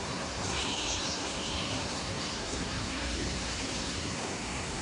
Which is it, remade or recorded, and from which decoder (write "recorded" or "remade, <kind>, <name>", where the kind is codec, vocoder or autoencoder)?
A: remade, codec, SNAC